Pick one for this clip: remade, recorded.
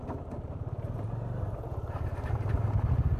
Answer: recorded